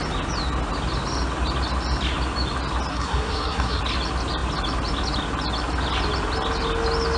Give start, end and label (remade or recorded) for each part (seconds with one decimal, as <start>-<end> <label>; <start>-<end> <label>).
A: 0.0-2.9 recorded; 2.9-3.8 remade; 3.8-7.2 recorded